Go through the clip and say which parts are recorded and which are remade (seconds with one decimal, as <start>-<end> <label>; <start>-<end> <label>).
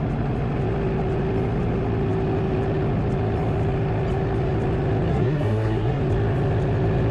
0.0-5.1 recorded; 5.1-6.0 remade; 6.0-7.1 recorded